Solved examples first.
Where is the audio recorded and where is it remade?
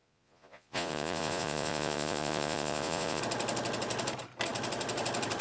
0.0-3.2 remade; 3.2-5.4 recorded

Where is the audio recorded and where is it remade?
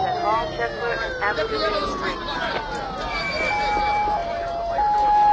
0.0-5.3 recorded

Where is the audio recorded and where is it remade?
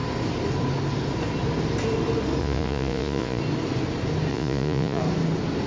0.0-2.4 recorded; 2.4-3.4 remade; 3.4-4.3 recorded; 4.3-5.0 remade; 5.0-5.7 recorded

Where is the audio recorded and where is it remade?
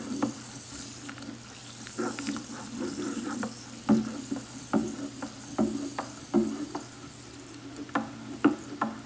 0.0-9.1 recorded